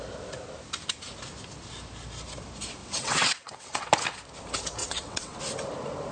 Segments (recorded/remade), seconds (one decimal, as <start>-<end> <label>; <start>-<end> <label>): 0.0-2.8 recorded; 2.8-3.9 remade; 3.9-4.8 recorded; 4.8-5.4 remade; 5.4-6.1 recorded

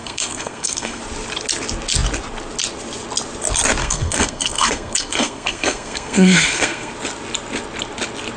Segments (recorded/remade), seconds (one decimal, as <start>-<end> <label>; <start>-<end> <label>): 0.0-1.0 remade; 1.0-3.8 recorded; 3.8-6.9 remade; 6.9-8.4 recorded

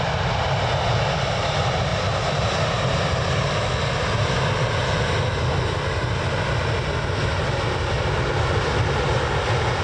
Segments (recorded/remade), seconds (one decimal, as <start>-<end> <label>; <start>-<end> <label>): 0.0-9.8 recorded